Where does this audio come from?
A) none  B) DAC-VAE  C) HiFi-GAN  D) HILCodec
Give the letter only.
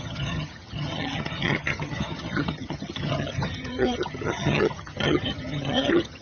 C